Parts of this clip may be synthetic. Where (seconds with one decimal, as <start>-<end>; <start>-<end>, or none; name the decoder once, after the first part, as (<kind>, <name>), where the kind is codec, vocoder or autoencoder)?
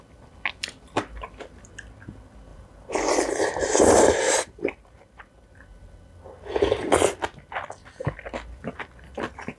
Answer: 2.5-5.2 (vocoder, BigVGAN v2)